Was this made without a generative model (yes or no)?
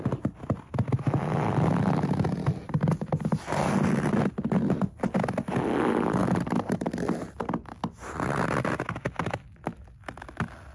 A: yes